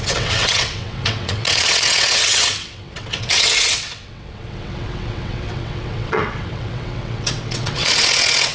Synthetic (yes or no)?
yes